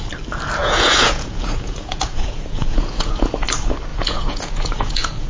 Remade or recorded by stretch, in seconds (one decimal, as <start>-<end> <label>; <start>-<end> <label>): 0.0-0.6 recorded; 0.6-3.3 remade; 3.3-3.9 recorded; 3.9-5.3 remade